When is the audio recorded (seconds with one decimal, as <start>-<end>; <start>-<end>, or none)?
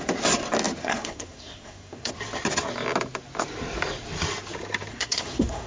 0.0-0.8; 2.1-4.9